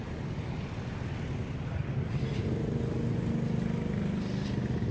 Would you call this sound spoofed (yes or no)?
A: no